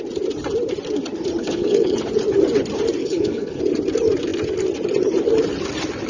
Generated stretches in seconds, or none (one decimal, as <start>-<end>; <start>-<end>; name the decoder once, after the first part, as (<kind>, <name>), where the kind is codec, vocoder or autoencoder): 1.4-2.0 (codec, HILCodec); 3.0-3.6